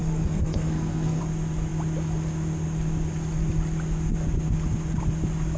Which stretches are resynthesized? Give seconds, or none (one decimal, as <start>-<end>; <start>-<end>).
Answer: 0.0-1.2